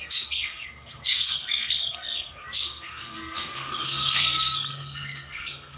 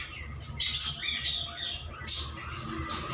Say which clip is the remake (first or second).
first